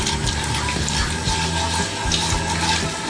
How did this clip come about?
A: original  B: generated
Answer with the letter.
A